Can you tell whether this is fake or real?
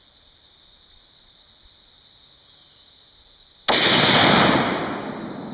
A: real